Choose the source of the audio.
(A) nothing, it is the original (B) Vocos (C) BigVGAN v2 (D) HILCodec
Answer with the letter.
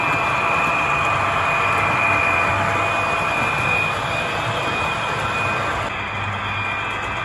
A